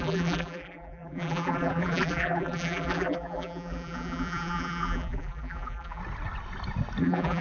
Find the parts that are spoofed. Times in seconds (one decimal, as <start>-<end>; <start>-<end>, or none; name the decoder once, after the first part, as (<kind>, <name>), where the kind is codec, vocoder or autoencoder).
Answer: 0.0-6.0 (vocoder, BigVGAN v2); 7.0-7.4